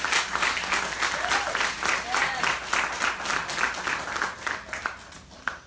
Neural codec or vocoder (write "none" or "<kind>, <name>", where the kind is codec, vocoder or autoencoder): none